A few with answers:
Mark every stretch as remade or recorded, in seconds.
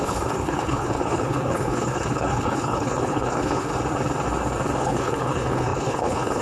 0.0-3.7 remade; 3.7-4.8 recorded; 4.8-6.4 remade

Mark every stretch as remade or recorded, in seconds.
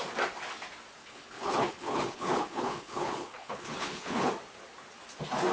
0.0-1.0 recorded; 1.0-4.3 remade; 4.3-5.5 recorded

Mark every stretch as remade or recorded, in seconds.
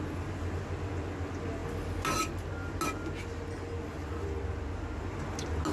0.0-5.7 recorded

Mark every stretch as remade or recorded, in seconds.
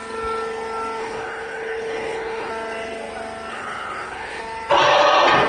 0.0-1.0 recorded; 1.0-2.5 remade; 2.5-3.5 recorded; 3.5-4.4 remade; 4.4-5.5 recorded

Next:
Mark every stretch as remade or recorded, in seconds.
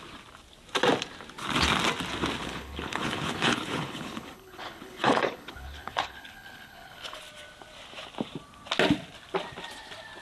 0.0-2.4 recorded; 2.4-7.2 remade; 7.2-10.2 recorded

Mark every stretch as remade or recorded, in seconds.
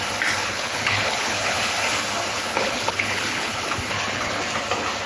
0.0-0.4 recorded; 0.4-1.7 remade; 1.7-2.3 recorded; 2.3-4.4 remade; 4.4-5.1 recorded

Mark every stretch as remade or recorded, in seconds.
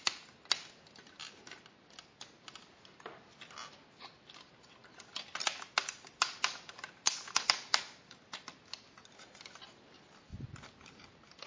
0.0-11.5 recorded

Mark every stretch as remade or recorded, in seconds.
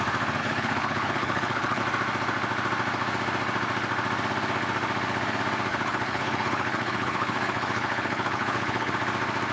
0.0-0.4 recorded; 0.4-1.8 remade; 1.8-5.7 recorded; 5.7-8.9 remade; 8.9-9.5 recorded